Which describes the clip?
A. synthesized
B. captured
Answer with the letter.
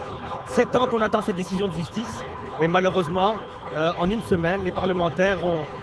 A